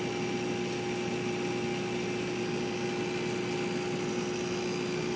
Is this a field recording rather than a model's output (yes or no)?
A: yes